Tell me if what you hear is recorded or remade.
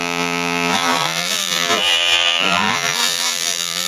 remade